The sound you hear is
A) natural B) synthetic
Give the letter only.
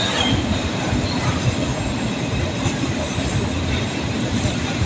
A